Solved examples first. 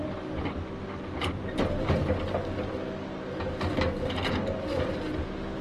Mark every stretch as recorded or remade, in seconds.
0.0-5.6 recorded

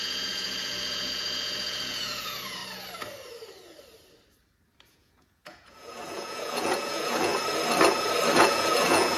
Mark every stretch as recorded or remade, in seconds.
0.0-2.6 remade; 2.6-4.9 recorded; 4.9-7.3 remade; 7.3-8.4 recorded; 8.4-9.2 remade

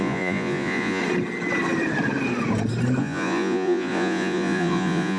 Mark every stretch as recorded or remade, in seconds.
0.0-1.0 remade; 1.0-3.0 recorded; 3.0-5.2 remade

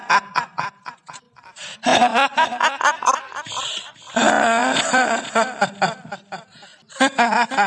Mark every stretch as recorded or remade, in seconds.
0.0-7.7 recorded

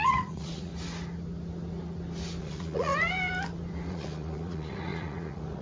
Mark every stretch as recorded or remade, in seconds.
0.0-0.7 remade; 0.7-2.4 recorded; 2.4-2.9 remade; 2.9-3.9 recorded; 3.9-5.6 remade

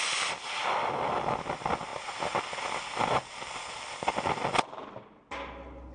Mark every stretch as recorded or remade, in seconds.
0.0-5.9 recorded

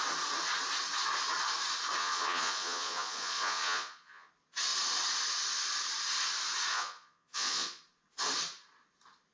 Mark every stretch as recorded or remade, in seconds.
0.0-2.0 recorded; 2.0-4.3 remade; 4.3-6.7 recorded; 6.7-7.8 remade; 7.8-9.3 recorded

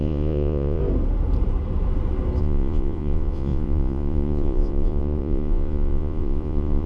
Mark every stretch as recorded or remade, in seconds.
0.0-0.8 remade; 0.8-2.4 recorded; 2.4-6.9 remade